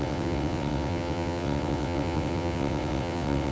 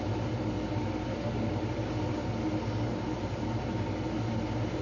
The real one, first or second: second